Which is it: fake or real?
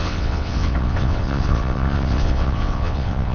fake